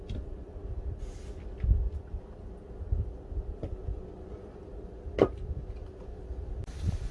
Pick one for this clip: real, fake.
real